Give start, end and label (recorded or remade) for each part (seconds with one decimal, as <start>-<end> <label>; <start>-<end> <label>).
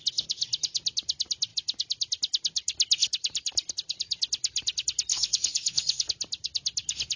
0.0-5.1 recorded; 5.1-6.1 remade; 6.1-7.2 recorded